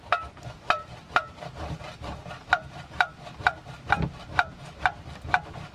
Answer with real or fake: fake